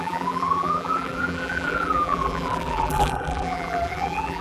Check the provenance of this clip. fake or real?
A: fake